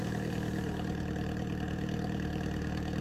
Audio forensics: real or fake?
fake